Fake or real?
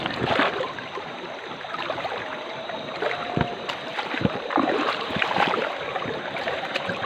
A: fake